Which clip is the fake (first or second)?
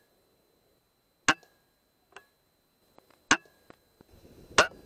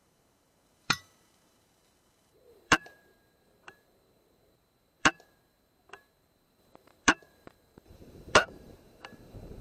second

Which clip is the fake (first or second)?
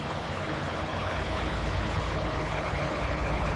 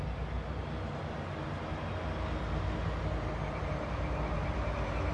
first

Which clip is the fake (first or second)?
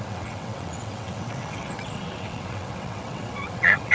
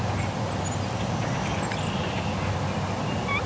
first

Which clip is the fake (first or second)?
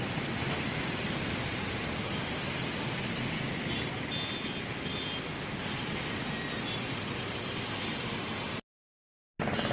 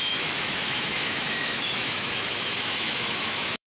second